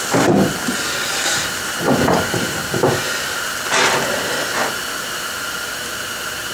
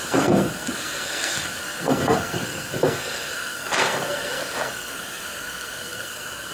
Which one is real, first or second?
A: first